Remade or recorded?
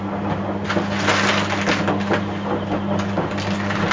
recorded